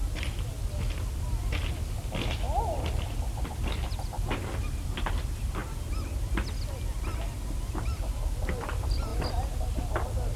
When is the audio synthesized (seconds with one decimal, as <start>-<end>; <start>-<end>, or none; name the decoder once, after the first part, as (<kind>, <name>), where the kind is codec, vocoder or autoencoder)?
0.0-0.6 (vocoder, BigVGAN v2); 3.4-5.6; 8.5-9.1; 9.6-10.4